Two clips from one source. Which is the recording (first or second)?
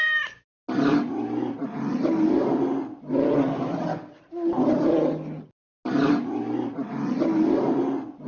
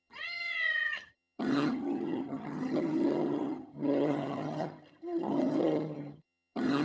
first